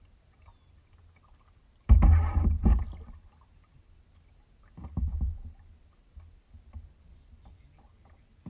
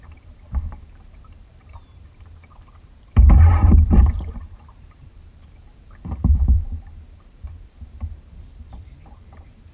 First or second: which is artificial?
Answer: second